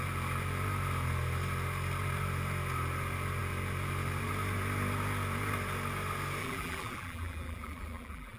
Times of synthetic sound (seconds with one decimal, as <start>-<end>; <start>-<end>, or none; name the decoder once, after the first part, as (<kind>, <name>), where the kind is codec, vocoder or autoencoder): 6.4-8.4 (vocoder, BigVGAN v2)

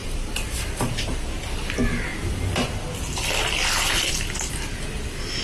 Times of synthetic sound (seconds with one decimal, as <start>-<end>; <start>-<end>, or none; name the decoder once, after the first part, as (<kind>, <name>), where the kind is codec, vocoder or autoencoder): 0.0-1.4 (vocoder, BigVGAN v2)

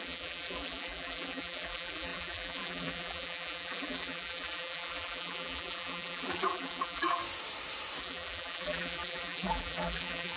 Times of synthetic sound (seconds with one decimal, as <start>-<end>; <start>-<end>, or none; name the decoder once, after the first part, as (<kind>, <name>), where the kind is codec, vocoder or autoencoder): 0.0-7.2 (vocoder, BigVGAN v2); 8.0-10.4

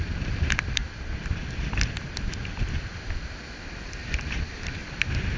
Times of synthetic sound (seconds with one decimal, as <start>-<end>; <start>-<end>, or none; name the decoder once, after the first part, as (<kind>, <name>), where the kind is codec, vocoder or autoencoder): 0.0-0.8 (vocoder, BigVGAN v2); 4.0-4.8

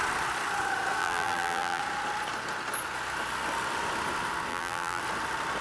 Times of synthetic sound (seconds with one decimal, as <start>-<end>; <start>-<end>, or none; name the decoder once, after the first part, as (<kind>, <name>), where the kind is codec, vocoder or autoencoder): 1.0-1.8 (vocoder, BigVGAN v2); 4.5-5.0

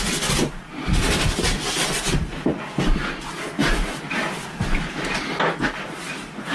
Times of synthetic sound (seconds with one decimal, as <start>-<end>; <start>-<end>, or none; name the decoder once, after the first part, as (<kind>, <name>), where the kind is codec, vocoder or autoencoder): 3.6-5.4 (vocoder, BigVGAN v2)

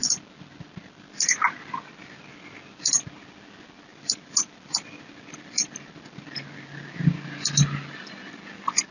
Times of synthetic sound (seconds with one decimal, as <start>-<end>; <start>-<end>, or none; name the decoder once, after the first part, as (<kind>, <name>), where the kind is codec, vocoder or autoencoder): 3.9-5.1 (vocoder, BigVGAN v2)